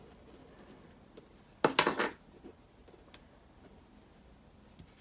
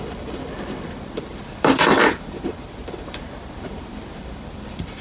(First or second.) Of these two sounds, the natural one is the first